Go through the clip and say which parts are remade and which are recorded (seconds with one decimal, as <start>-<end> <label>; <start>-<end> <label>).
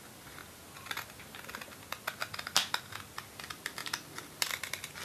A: 0.0-0.4 remade; 0.4-3.4 recorded; 3.4-5.0 remade